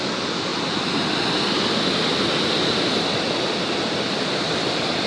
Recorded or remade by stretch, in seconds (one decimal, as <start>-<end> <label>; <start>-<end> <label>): 0.0-5.1 recorded